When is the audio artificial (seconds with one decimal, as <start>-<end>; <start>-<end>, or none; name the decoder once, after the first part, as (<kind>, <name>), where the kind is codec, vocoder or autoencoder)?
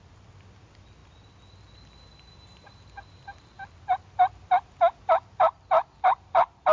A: none